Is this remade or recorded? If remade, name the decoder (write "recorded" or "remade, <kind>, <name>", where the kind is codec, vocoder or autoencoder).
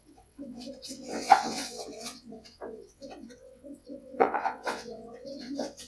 remade, vocoder, WaveNeXt